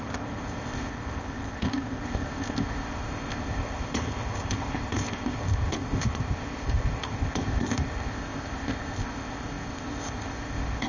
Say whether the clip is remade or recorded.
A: remade